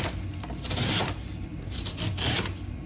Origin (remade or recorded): recorded